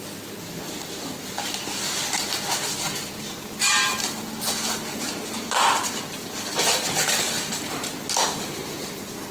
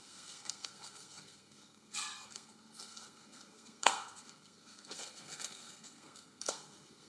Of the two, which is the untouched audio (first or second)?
first